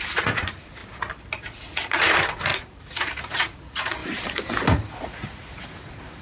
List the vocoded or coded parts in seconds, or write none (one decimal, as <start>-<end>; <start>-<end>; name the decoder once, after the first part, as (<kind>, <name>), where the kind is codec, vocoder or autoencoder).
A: 0.0-0.8 (vocoder, Vocos); 1.4-4.0; 4.7-6.2